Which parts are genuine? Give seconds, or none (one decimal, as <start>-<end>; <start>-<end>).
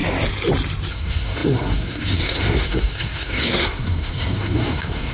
0.0-0.9